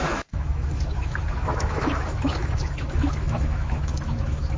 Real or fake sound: fake